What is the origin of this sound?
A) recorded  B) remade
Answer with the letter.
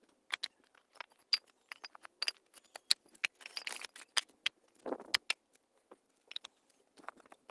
A